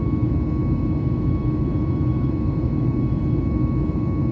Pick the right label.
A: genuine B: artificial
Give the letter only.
B